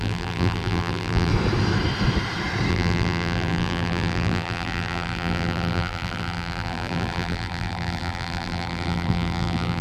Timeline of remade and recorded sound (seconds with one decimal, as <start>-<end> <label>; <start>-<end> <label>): 0.0-1.3 remade; 1.3-2.7 recorded; 2.7-9.8 remade